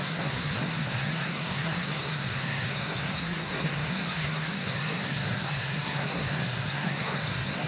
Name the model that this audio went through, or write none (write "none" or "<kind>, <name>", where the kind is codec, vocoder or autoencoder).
codec, SNAC